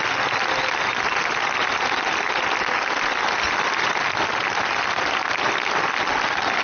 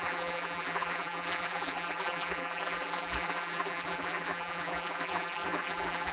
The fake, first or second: second